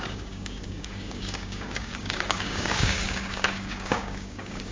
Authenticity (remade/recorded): remade